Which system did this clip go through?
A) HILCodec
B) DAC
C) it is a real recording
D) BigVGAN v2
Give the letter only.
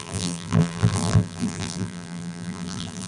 D